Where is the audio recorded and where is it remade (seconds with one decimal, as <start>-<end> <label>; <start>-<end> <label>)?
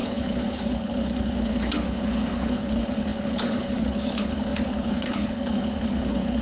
0.0-6.4 remade